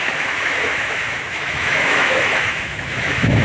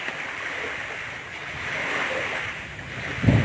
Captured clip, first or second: second